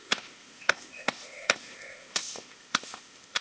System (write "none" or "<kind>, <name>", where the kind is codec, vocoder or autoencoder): codec, ZipCodec